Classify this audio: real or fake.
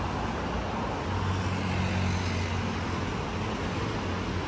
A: real